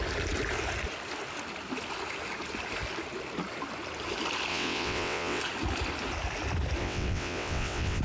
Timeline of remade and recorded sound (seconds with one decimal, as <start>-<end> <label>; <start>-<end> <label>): 0.0-4.5 recorded; 4.5-5.4 remade; 5.4-6.8 recorded; 6.8-8.0 remade